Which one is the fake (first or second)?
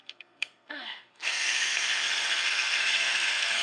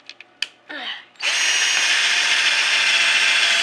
first